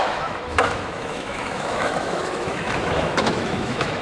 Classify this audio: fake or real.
fake